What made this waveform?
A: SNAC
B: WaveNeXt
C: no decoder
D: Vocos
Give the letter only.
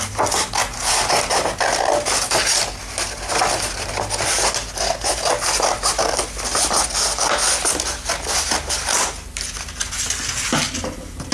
C